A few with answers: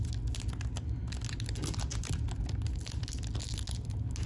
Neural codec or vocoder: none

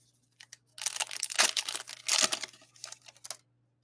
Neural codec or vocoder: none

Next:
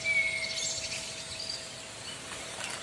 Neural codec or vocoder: none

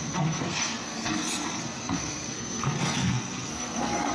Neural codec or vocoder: codec, SNAC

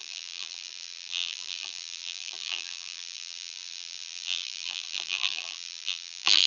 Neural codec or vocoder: vocoder, BigVGAN v2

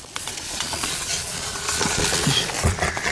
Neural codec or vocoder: vocoder, Vocos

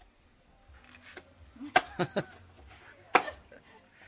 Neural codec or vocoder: none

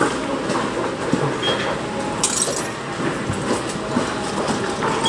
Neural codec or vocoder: none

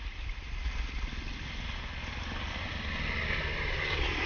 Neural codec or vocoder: vocoder, BigVGAN v2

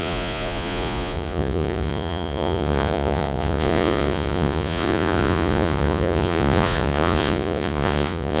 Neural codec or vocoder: vocoder, Vocos